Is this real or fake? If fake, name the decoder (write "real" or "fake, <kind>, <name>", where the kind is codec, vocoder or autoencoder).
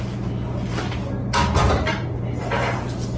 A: real